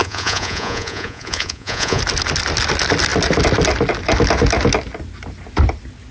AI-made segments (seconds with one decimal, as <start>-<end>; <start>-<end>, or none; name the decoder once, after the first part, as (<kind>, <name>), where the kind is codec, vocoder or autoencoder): 0.0-2.0 (vocoder, Vocos)